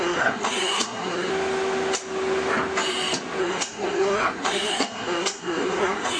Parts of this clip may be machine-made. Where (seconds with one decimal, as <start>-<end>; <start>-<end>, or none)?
0.0-1.3; 3.4-6.2